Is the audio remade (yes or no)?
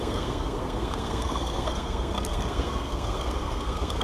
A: yes